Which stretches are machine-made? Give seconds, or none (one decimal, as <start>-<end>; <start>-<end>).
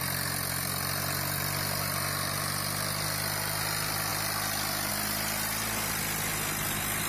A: none